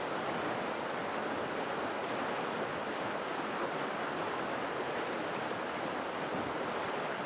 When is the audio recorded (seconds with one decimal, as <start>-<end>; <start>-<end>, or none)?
0.0-7.3